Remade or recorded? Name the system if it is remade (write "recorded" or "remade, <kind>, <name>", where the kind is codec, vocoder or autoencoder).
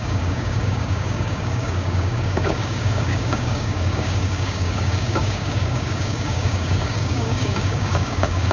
remade, codec, DAC